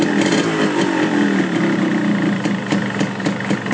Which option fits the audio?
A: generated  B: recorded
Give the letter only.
B